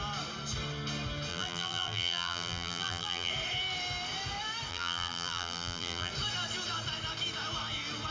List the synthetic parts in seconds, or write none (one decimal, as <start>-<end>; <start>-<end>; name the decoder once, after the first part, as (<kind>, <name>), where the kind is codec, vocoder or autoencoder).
1.3-3.3 (vocoder, BigVGAN v2); 4.7-6.1